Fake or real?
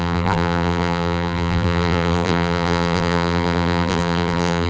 fake